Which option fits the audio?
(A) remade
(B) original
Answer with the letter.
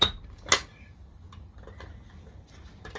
B